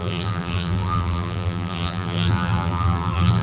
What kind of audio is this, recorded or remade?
remade